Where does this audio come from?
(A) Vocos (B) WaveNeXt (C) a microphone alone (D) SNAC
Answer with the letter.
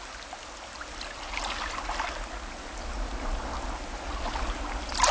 C